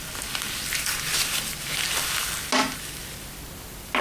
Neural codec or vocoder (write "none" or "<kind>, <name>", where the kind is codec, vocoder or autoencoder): none